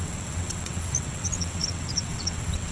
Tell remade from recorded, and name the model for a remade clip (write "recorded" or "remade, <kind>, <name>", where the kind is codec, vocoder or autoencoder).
remade, vocoder, WaveNeXt